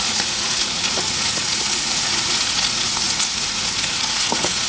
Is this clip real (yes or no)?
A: no